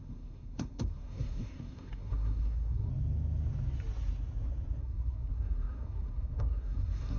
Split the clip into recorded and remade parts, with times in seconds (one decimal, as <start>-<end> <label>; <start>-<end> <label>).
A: 0.0-2.9 remade; 2.9-4.8 recorded; 4.8-7.2 remade